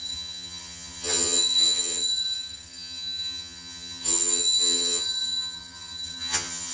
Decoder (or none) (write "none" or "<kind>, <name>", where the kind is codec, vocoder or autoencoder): vocoder, HiFi-GAN